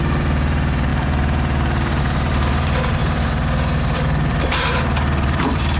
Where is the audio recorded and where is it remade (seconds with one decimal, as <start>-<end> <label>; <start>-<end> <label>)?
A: 0.0-5.8 remade